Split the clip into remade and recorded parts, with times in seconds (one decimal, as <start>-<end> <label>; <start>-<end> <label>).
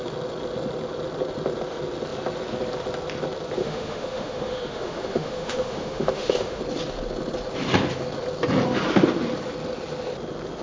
0.0-3.6 recorded; 3.6-6.6 remade; 6.6-10.6 recorded